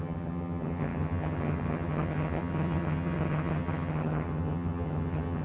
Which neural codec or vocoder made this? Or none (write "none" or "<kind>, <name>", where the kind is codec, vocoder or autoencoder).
vocoder, HiFi-GAN